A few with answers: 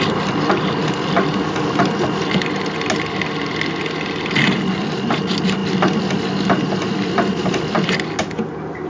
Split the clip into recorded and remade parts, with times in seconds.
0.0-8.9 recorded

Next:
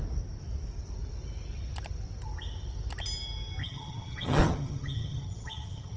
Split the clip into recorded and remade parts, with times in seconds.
0.0-3.6 recorded; 3.6-6.0 remade